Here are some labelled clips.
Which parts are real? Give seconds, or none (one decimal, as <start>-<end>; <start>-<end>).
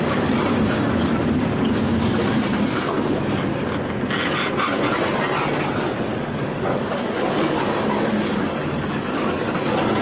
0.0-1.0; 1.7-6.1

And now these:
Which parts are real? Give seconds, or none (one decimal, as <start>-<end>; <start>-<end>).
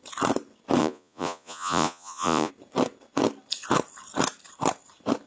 0.0-0.8; 2.5-5.3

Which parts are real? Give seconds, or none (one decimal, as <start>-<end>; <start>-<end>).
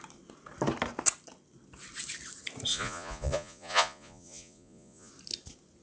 0.0-2.7; 5.1-5.8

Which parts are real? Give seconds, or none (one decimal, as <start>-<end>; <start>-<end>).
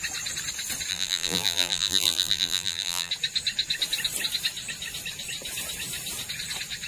0.0-0.9; 3.1-6.9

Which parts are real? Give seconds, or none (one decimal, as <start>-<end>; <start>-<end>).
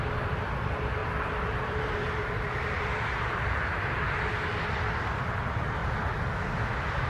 0.0-1.0; 4.2-7.1